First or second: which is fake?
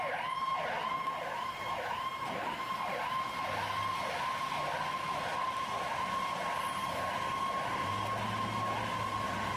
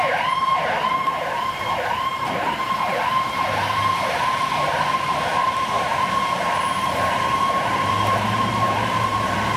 second